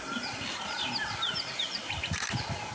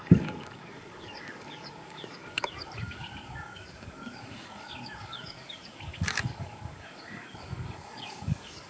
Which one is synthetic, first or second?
second